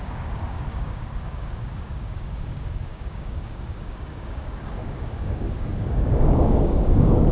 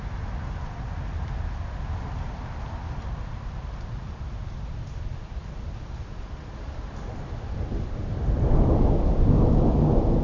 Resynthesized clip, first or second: first